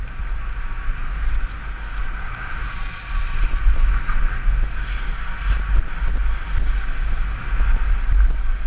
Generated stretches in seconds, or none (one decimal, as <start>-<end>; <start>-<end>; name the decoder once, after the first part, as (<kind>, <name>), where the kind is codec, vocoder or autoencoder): none